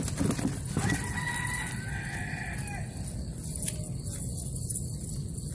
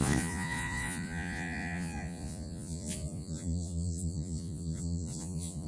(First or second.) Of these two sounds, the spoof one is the second